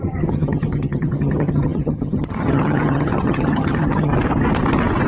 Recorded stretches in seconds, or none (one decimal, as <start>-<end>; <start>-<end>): 4.1-5.1